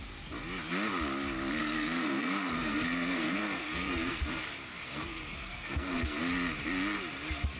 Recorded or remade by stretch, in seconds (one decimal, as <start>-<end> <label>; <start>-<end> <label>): 0.0-1.6 recorded; 1.6-6.2 remade; 6.2-7.6 recorded